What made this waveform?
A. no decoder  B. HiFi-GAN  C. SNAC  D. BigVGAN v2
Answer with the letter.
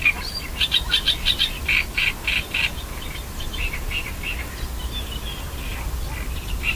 A